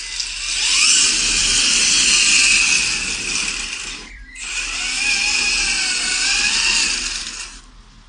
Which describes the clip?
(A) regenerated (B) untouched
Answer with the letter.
B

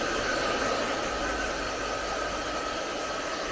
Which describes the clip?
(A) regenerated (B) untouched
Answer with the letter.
B